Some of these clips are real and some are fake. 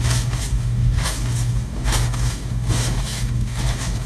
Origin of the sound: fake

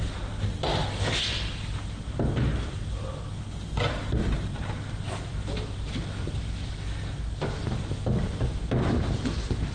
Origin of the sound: real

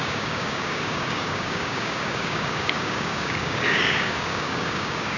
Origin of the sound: fake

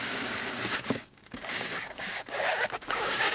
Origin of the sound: fake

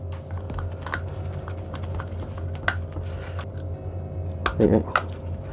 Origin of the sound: real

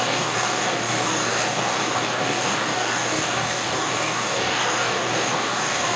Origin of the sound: fake